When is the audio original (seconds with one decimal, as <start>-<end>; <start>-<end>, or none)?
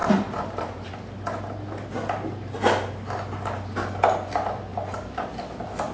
0.9-4.7; 5.3-5.9